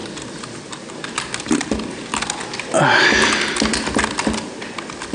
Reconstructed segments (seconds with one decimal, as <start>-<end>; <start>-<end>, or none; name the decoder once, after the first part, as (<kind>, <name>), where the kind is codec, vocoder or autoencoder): none